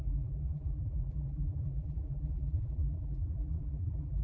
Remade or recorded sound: remade